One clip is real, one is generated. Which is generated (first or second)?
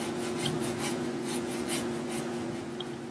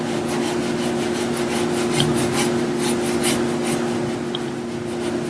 first